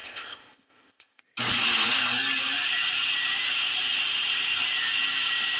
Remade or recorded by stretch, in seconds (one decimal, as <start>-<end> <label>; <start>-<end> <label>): 0.0-1.2 remade; 1.2-5.6 recorded